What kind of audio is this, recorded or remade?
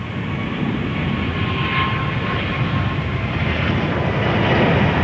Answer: recorded